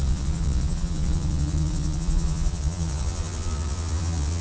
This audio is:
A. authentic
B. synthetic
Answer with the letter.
B